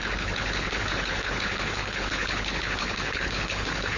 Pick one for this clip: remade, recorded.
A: remade